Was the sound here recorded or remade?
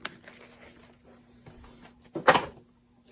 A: recorded